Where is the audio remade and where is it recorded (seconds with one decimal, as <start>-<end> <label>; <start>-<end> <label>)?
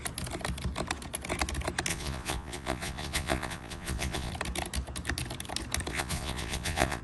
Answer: 0.0-1.9 recorded; 1.9-4.3 remade; 4.3-5.9 recorded; 5.9-7.0 remade